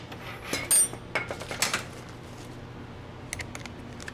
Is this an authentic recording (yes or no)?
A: yes